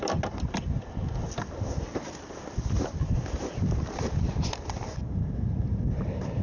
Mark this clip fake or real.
real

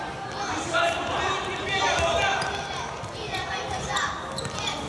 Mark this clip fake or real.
real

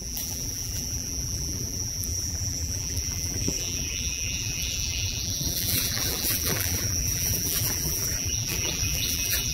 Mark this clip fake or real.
fake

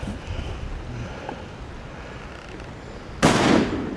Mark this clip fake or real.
real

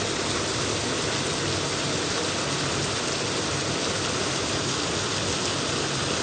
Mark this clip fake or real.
real